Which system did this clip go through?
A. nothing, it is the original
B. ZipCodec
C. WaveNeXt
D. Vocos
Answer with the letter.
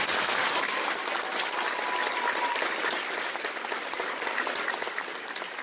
A